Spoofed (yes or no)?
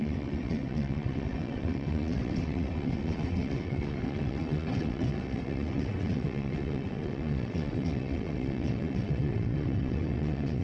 yes